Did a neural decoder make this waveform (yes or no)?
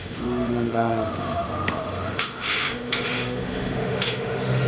yes